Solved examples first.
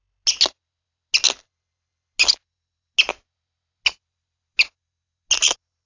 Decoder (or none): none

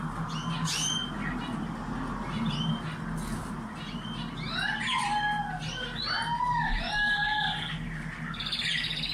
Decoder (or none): none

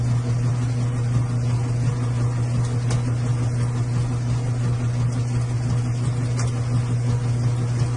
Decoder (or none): none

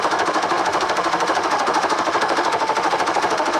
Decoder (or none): autoencoder, DAC-VAE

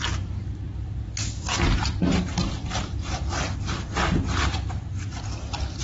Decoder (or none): none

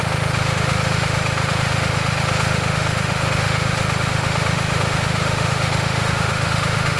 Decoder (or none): autoencoder, DAC-VAE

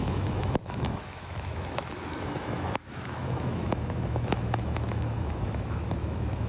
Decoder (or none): autoencoder, DAC-VAE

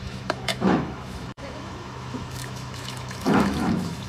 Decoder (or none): autoencoder, DAC-VAE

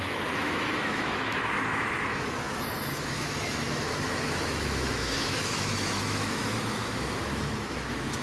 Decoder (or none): autoencoder, DAC-VAE